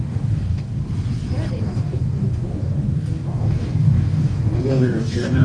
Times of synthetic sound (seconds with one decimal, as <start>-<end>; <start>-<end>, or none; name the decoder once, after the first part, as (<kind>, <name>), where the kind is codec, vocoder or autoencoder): 0.0-0.8 (codec, DAC); 1.6-5.4